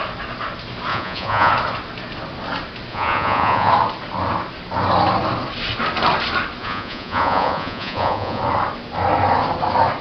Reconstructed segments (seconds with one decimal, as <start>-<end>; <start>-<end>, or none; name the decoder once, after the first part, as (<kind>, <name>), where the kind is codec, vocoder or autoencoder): 0.9-1.5 (vocoder, Vocos); 2.9-3.7; 6.6-8.4